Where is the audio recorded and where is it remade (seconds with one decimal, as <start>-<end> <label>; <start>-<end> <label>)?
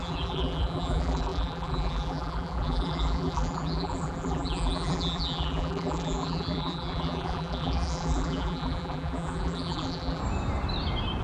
0.0-10.2 remade; 10.2-11.2 recorded